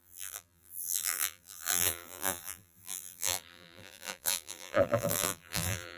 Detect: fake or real fake